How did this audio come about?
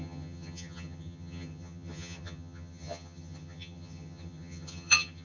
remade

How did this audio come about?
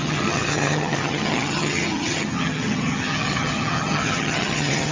remade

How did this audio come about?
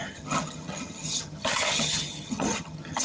remade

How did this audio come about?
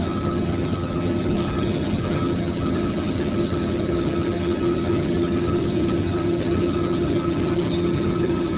remade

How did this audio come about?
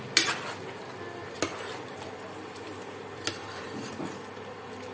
recorded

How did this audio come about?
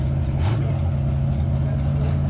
recorded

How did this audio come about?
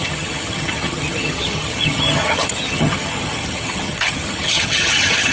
remade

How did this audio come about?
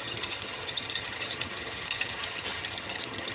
remade